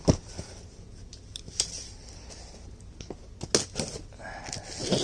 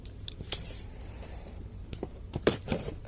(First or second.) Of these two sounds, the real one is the first